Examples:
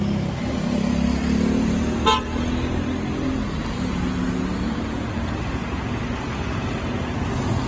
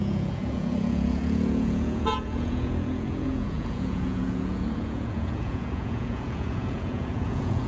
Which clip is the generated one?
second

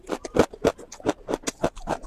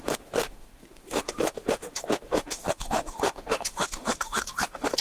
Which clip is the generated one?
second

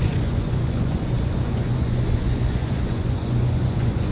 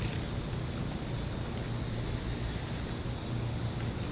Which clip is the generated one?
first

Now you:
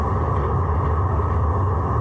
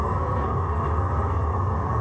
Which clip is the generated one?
second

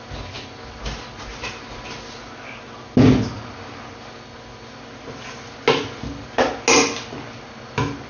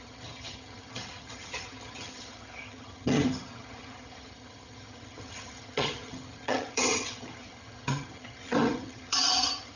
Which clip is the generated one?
second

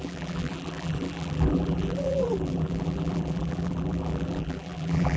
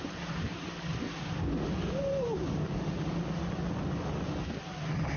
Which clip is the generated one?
first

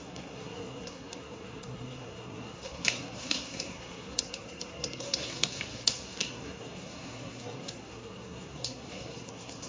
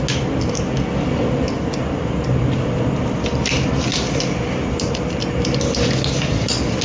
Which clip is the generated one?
first